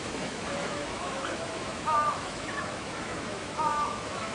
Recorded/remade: remade